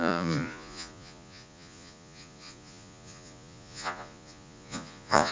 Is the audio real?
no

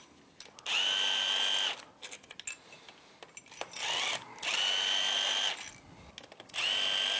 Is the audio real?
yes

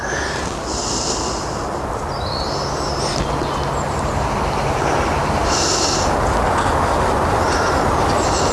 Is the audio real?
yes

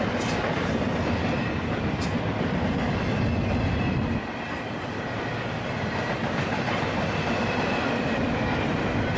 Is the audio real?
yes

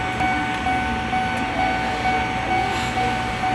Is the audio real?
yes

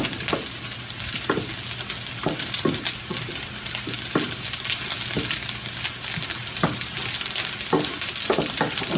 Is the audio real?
yes